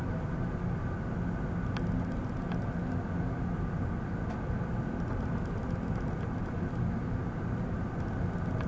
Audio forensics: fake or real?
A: real